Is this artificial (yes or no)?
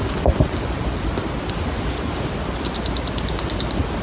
no